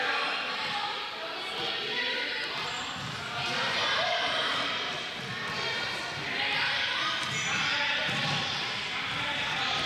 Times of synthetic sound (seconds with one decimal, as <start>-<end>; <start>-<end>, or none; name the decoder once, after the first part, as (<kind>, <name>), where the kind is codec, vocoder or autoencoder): 8.0-9.9 (vocoder, BigVGAN v2)